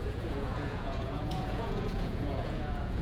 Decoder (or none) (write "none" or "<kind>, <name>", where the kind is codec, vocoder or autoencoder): vocoder, Vocos